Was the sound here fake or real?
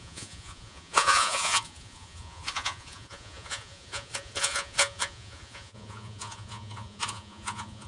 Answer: fake